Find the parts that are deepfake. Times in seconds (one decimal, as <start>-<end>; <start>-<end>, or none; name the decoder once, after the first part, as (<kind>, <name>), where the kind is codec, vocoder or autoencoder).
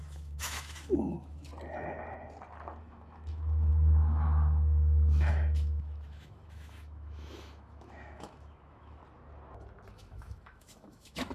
0.0-1.5 (autoencoder, DAC-VAE); 2.8-9.0; 9.9-11.3